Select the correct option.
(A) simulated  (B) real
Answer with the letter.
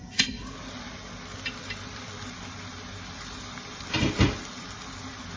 B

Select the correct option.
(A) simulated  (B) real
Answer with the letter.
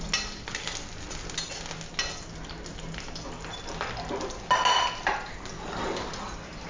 B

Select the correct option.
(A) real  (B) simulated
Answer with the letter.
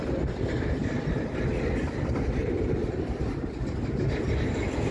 A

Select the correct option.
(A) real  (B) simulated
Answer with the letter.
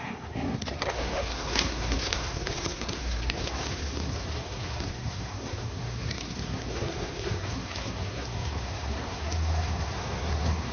B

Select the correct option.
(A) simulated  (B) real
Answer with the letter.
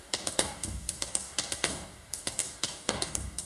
A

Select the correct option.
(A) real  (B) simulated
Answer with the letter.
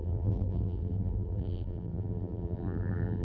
B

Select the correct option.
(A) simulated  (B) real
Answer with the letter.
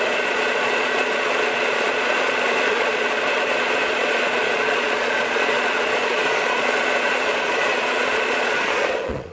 A